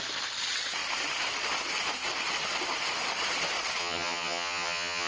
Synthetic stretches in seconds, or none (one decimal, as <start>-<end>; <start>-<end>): 3.8-5.1

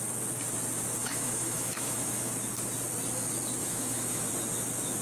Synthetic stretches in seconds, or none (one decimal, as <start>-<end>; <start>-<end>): 1.0-2.3; 3.6-4.3

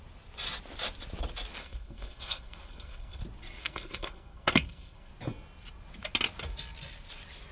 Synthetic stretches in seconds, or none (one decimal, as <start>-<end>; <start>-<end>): 1.6-3.2; 3.6-5.1

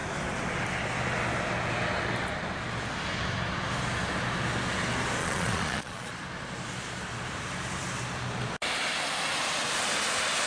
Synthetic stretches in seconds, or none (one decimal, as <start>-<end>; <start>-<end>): 5.2-6.1

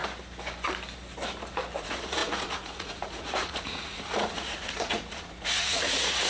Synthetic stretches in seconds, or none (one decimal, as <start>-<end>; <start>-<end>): 1.8-6.3